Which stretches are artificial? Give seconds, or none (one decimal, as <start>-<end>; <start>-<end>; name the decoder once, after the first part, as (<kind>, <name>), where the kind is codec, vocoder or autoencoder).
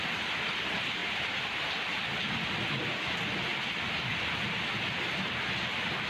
1.0-2.0 (vocoder, BigVGAN v2)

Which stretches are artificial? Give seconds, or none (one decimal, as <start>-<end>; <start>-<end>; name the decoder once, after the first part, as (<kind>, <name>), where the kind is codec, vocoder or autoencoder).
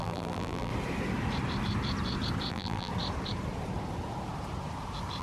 0.0-0.7 (vocoder, BigVGAN v2); 2.5-2.9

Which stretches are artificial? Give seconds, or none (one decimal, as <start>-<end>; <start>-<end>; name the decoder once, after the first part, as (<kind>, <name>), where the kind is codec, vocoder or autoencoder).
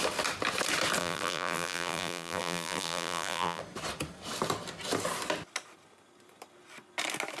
1.0-3.6 (vocoder, BigVGAN v2)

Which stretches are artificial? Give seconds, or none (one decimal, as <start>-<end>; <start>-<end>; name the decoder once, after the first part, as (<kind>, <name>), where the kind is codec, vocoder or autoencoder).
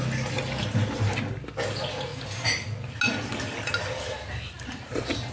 none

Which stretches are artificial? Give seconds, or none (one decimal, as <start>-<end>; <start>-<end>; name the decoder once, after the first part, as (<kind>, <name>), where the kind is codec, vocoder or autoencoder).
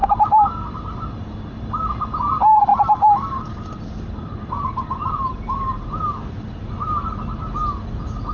0.0-1.5 (vocoder, BigVGAN v2); 2.7-7.6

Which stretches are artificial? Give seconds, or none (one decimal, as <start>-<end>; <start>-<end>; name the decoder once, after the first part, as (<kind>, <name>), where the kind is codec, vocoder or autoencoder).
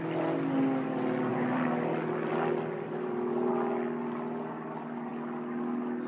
1.3-3.5 (vocoder, BigVGAN v2)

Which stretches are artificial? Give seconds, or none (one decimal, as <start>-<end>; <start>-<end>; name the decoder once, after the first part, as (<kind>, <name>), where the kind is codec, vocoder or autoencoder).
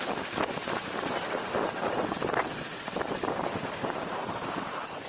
0.0-5.1 (vocoder, BigVGAN v2)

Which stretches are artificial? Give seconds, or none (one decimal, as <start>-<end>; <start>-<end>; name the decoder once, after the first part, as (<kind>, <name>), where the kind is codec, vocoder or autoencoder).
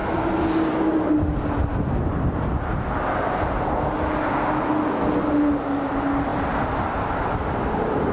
6.3-8.1 (vocoder, BigVGAN v2)